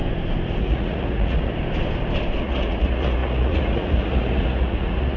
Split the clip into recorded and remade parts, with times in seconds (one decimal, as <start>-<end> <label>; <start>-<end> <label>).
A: 0.0-0.6 recorded; 0.6-1.5 remade; 1.5-2.4 recorded; 2.4-5.2 remade